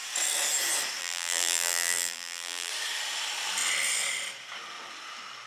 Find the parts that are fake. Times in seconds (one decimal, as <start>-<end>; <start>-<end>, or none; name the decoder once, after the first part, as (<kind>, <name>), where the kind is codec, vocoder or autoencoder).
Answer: 1.0-2.7 (vocoder, BigVGAN v2)